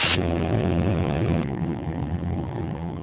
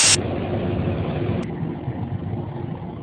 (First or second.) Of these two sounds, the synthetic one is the first